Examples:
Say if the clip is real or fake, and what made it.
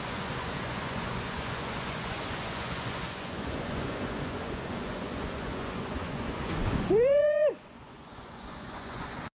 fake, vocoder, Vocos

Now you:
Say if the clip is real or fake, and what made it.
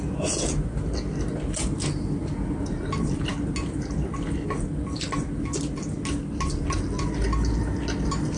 real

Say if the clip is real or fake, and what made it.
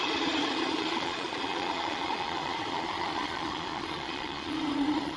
fake, vocoder, Vocos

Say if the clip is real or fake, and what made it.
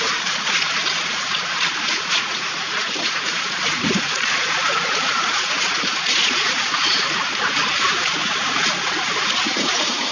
fake, vocoder, Vocos